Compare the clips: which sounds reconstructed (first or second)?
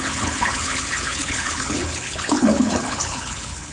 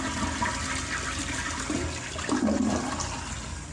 first